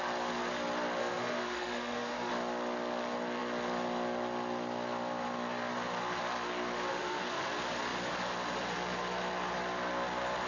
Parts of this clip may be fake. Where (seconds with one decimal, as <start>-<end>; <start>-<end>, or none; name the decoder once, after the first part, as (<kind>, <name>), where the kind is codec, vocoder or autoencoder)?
1.0-2.3 (autoencoder, DAC-VAE); 6.9-7.5